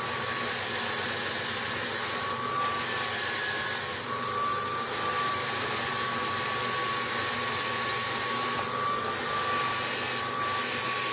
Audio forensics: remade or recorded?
recorded